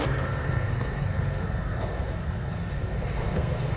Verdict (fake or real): fake